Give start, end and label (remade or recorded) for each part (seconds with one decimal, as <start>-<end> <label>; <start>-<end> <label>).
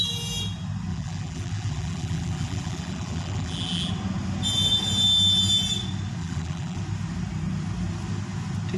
0.0-0.9 recorded; 0.9-3.9 remade; 3.9-6.2 recorded; 6.2-6.8 remade; 6.8-8.8 recorded